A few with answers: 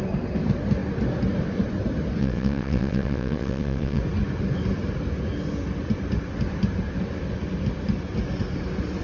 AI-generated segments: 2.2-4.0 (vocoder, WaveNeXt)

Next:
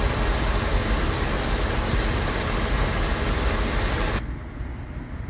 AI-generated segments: none

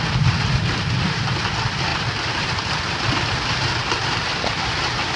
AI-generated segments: none

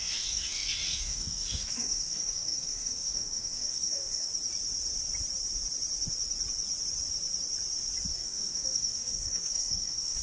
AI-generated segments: 0.0-4.3 (codec, DAC); 8.1-10.2

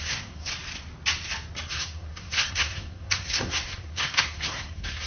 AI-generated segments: 0.0-0.5 (codec, SNAC); 1.7-5.1

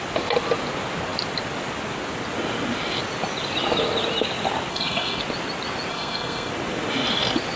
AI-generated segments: 4.7-5.2 (codec, SNAC); 5.9-6.5

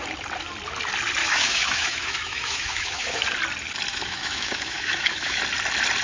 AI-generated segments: 1.2-3.2 (autoencoder, DAC-VAE); 3.9-5.4

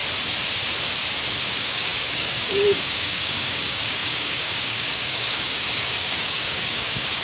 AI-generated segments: 1.4-7.2 (codec, DAC)